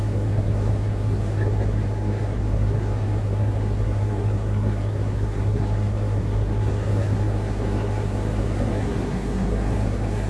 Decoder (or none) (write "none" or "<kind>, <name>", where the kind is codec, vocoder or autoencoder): codec, SNAC